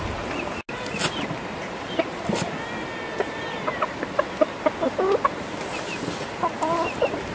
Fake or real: real